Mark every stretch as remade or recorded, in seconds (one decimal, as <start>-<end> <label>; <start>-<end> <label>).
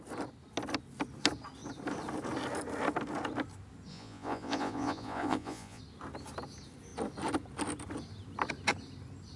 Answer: 0.0-3.9 recorded; 3.9-5.8 remade; 5.8-9.4 recorded